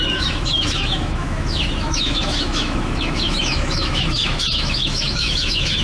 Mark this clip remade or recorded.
remade